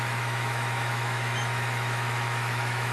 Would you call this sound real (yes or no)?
no